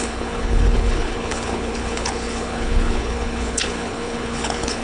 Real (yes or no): no